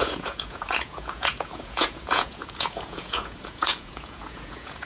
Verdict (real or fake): fake